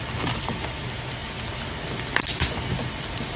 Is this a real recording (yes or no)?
yes